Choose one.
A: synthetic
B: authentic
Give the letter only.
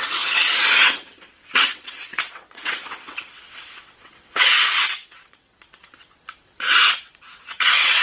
A